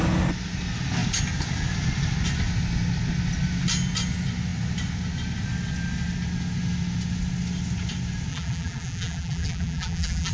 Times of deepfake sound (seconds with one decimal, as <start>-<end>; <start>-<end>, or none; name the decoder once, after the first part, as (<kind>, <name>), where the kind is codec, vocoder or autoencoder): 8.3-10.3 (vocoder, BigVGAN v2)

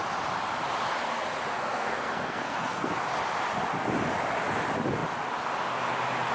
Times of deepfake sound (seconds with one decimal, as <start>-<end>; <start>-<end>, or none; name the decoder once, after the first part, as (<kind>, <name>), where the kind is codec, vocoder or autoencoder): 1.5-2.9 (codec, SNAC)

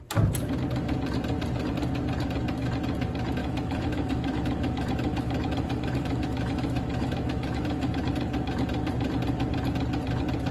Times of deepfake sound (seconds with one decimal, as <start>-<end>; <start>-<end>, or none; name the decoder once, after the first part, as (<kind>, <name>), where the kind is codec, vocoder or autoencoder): 3.4-7.9 (autoencoder, DAC-VAE)